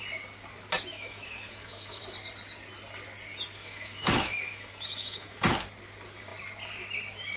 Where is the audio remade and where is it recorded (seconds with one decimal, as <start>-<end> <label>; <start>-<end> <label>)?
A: 0.0-0.9 recorded; 0.9-2.0 remade; 2.0-3.6 recorded; 3.6-5.5 remade; 5.5-7.4 recorded